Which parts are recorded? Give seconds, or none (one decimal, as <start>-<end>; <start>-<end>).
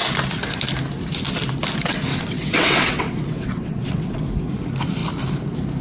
0.0-2.1; 4.2-5.8